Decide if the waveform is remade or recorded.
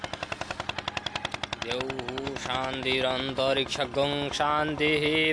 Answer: recorded